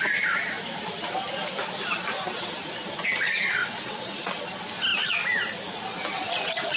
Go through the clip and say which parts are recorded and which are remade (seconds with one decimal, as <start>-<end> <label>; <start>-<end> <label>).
0.0-3.6 recorded; 3.6-4.3 remade; 4.3-6.8 recorded